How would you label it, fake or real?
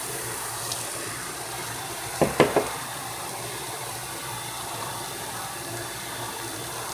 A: fake